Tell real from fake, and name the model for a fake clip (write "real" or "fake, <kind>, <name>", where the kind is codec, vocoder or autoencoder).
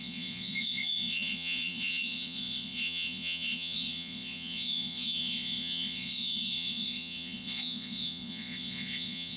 fake, vocoder, Vocos